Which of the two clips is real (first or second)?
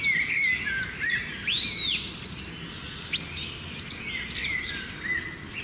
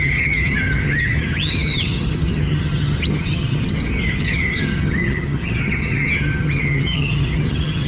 first